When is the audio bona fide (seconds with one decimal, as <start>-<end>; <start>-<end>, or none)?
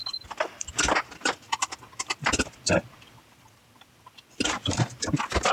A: 0.0-2.9; 4.5-5.5